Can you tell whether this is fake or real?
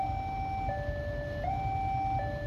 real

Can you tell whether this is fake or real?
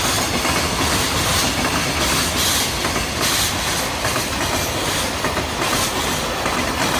real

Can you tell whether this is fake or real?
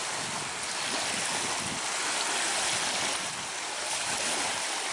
real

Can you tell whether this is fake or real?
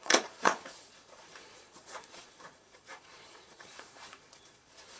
fake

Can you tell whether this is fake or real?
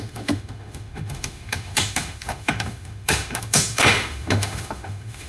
fake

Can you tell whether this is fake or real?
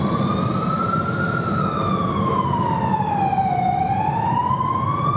real